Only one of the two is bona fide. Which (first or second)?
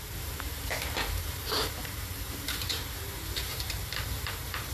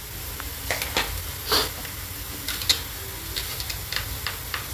second